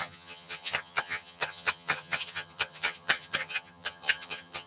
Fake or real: fake